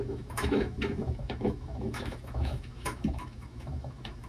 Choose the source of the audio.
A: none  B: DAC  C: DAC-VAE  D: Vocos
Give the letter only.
C